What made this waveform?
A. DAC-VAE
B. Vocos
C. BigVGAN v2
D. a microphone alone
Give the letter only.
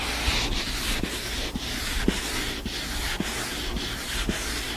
D